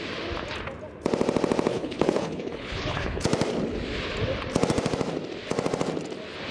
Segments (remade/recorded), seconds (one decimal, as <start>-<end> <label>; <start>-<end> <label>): 0.0-1.7 recorded; 1.7-3.2 remade; 3.2-6.5 recorded